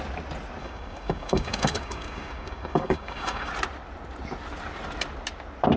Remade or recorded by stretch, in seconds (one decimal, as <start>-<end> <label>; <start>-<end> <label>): 0.0-0.6 recorded; 0.6-3.5 remade; 3.5-5.8 recorded